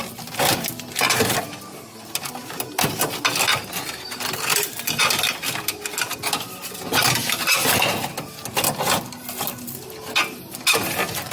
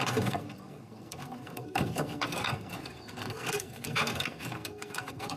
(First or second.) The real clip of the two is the first